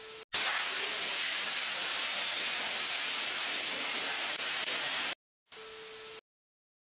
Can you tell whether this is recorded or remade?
recorded